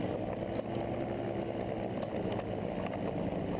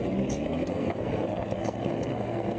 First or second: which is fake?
second